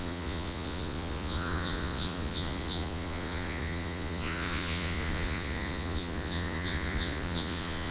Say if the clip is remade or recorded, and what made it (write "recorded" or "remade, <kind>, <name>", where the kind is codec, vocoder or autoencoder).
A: remade, vocoder, Vocos